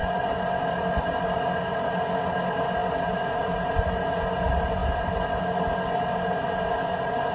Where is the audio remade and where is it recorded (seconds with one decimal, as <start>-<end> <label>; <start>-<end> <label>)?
0.0-7.3 recorded